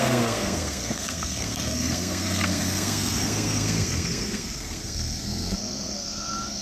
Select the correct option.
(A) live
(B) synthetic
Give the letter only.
B